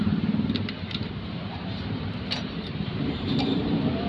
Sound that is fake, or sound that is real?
fake